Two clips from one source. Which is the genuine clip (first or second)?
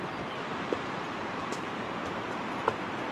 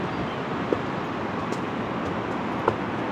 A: second